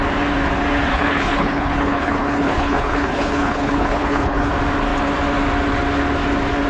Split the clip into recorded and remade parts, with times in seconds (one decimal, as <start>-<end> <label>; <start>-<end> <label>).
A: 0.0-0.9 recorded; 0.9-4.5 remade; 4.5-6.7 recorded